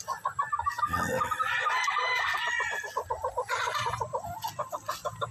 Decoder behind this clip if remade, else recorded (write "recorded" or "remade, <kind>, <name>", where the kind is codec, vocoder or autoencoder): recorded